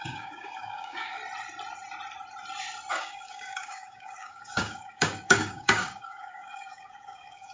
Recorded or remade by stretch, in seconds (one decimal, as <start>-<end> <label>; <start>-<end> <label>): 0.0-1.2 remade; 1.2-2.9 recorded; 2.9-7.5 remade